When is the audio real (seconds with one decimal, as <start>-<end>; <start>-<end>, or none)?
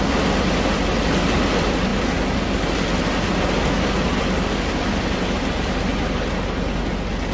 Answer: 0.0-7.3